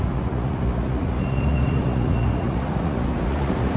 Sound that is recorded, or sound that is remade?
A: remade